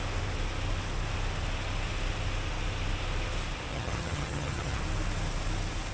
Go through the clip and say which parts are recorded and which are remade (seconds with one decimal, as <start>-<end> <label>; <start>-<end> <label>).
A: 0.0-3.7 recorded; 3.7-4.8 remade; 4.8-5.9 recorded